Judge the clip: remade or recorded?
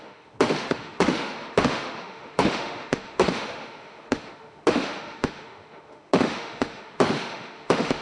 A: remade